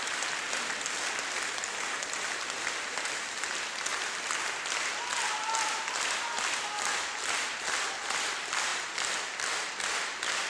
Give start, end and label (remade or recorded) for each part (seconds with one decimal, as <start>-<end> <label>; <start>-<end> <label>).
0.0-3.9 remade; 3.9-5.3 recorded; 5.3-10.5 remade